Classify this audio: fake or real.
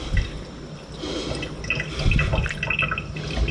real